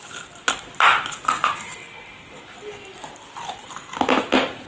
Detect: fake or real real